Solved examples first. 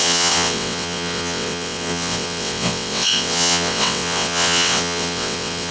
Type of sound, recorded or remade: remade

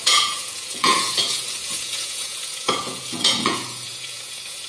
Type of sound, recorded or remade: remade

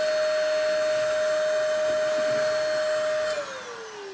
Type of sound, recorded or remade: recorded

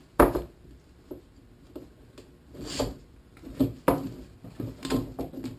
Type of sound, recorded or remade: recorded